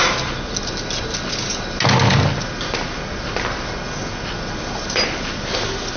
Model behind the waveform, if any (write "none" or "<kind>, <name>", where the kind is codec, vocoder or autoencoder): none